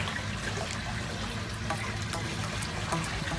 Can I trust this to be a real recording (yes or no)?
yes